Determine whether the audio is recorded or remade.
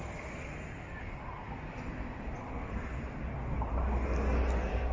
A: recorded